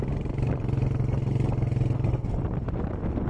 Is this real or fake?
real